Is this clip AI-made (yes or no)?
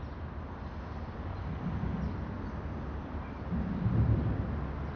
no